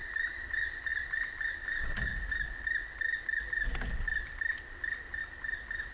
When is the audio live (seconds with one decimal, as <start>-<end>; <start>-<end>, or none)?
0.0-5.9